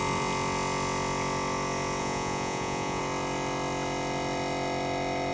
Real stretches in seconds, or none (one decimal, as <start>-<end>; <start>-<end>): 0.0-2.0; 3.0-5.3

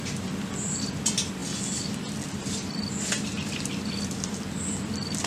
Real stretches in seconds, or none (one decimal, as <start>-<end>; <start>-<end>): 0.0-5.3

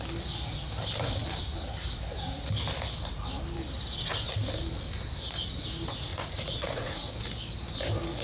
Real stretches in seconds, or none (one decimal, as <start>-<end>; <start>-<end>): 0.0-6.1; 7.1-8.2